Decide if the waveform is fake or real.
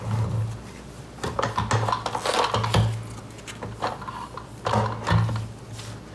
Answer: real